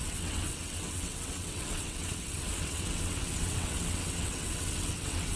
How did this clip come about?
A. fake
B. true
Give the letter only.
A